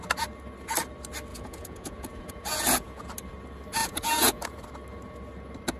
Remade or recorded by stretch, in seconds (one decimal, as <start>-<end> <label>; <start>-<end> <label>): 0.0-1.3 recorded; 1.3-3.0 remade; 3.0-3.8 recorded; 3.8-4.6 remade; 4.6-5.8 recorded